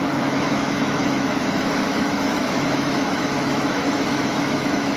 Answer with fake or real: fake